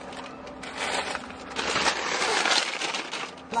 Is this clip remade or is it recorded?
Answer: recorded